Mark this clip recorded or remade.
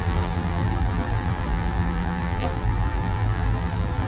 remade